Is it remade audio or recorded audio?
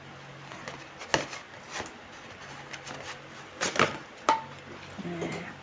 recorded